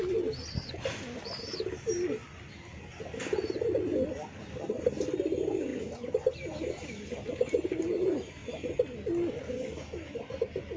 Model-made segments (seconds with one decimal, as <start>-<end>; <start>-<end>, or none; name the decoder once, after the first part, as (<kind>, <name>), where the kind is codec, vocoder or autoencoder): none